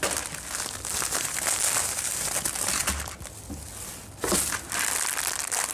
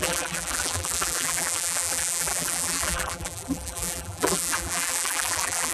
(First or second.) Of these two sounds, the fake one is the second